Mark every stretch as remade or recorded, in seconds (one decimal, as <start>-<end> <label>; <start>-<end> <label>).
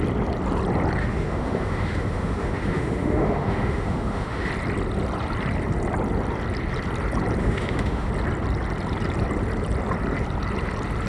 0.0-1.0 recorded; 1.0-4.5 remade; 4.5-7.4 recorded; 7.4-8.1 remade; 8.1-11.1 recorded